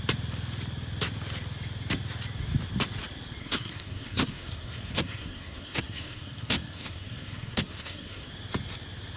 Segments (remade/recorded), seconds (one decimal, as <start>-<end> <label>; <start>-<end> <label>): 0.0-3.4 recorded; 3.4-8.3 remade; 8.3-9.2 recorded